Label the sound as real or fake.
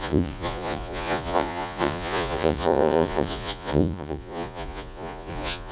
fake